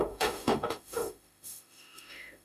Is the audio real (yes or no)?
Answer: no